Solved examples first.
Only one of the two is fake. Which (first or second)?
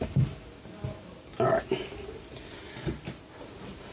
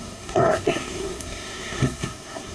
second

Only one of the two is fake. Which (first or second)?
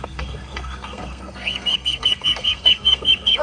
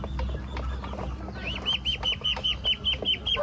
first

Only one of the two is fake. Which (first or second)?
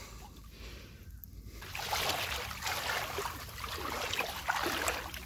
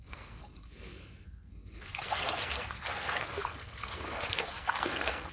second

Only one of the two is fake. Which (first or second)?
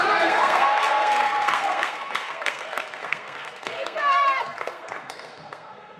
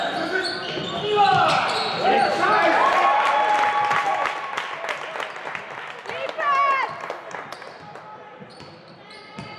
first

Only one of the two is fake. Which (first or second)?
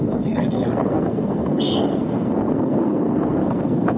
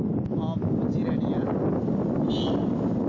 first